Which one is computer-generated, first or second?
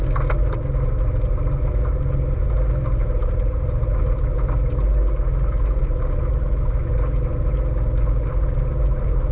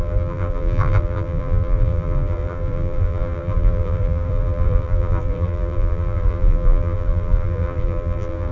second